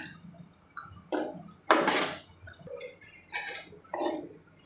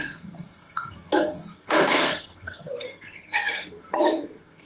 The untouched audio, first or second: first